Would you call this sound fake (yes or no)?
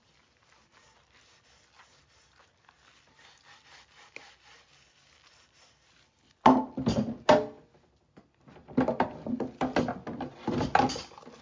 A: no